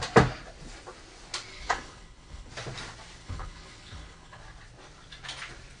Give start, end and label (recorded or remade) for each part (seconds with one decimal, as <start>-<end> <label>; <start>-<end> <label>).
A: 0.0-1.5 recorded; 1.5-2.5 remade; 2.5-3.2 recorded; 3.2-4.4 remade; 4.4-5.8 recorded